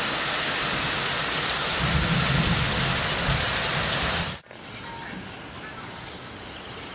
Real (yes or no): yes